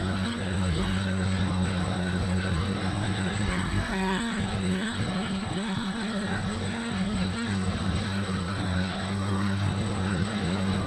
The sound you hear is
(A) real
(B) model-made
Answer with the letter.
B